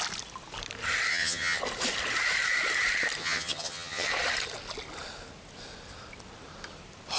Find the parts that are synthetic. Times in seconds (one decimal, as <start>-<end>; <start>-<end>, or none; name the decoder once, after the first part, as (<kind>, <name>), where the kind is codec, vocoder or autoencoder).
1.1-1.6 (vocoder, HiFi-GAN); 3.2-4.1